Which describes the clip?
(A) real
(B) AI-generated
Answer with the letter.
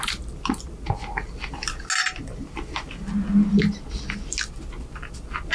A